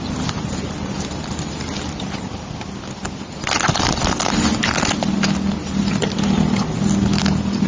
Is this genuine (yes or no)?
yes